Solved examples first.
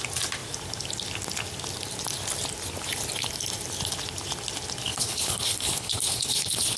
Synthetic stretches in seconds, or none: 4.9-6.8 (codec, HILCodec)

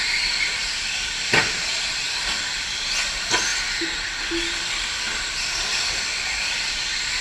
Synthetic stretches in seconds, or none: none